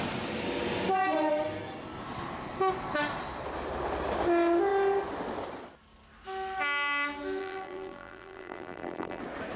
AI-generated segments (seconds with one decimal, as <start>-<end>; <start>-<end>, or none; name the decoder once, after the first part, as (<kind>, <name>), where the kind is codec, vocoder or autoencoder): 7.4-9.2 (vocoder, BigVGAN v2)